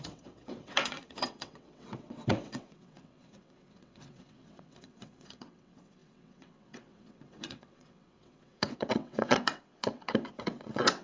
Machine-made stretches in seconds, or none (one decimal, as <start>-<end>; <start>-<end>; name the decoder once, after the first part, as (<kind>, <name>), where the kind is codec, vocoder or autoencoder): 0.0-11.0 (vocoder, WaveNeXt)